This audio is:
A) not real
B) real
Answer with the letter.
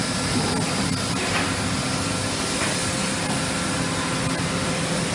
B